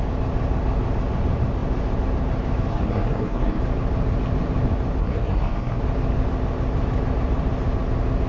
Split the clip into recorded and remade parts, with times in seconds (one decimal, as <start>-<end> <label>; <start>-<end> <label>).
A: 0.0-2.7 recorded; 2.7-3.6 remade; 3.6-5.0 recorded; 5.0-5.8 remade; 5.8-8.3 recorded